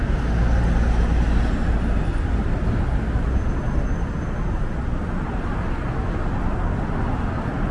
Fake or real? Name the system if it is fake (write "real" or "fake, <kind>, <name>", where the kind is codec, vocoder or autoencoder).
real